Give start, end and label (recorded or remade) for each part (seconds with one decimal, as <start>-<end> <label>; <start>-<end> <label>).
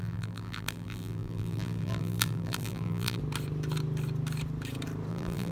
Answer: 0.0-3.2 remade; 3.2-5.1 recorded; 5.1-5.5 remade